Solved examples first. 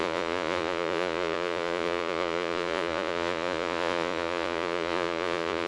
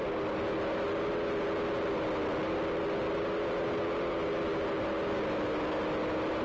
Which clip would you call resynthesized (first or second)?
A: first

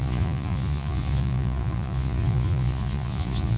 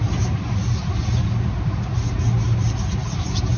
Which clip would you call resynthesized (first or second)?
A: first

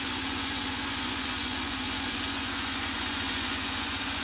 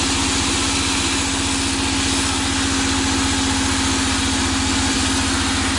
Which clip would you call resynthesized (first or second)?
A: first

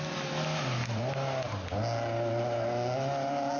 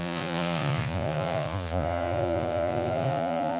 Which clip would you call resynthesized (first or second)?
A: second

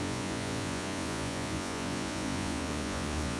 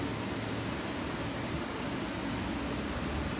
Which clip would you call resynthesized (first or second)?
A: first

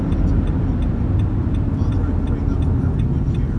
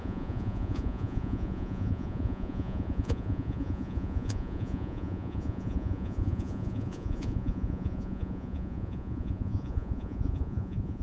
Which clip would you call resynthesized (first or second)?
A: second